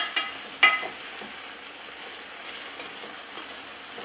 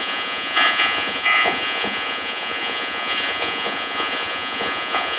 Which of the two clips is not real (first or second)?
second